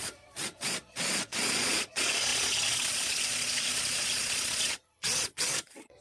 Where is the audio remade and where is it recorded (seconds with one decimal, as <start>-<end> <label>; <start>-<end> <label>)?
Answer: 0.0-6.0 remade